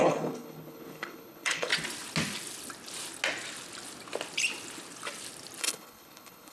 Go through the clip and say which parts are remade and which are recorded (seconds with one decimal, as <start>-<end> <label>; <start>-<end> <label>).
0.0-1.7 remade; 1.7-5.6 recorded; 5.6-6.5 remade